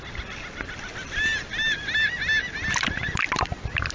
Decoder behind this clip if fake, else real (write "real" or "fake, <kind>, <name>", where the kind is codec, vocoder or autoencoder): real